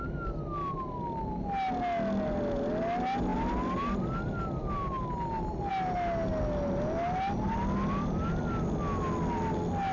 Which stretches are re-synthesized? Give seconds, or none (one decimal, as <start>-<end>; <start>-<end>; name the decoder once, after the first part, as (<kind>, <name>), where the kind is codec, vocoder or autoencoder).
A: none